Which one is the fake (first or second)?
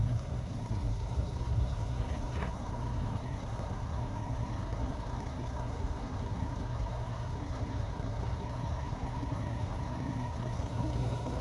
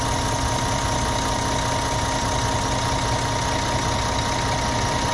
first